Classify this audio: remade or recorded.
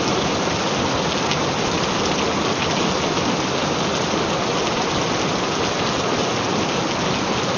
recorded